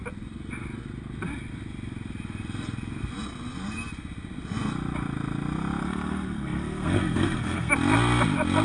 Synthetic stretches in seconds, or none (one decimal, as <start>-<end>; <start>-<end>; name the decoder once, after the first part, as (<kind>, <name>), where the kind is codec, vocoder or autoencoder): 5.8-7.7 (codec, SNAC)